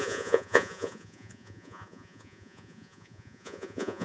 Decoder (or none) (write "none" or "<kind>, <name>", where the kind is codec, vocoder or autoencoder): vocoder, Vocos